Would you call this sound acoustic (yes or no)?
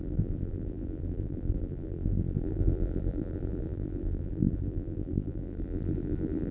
no